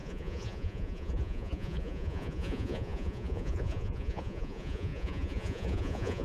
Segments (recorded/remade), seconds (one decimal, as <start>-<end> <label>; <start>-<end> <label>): 0.0-6.2 remade